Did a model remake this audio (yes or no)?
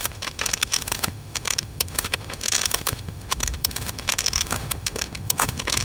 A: yes